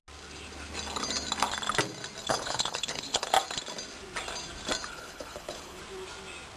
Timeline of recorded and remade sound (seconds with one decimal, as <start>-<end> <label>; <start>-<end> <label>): 0.0-2.2 recorded; 2.2-3.3 remade; 3.3-4.9 recorded; 4.9-5.8 remade; 5.8-6.6 recorded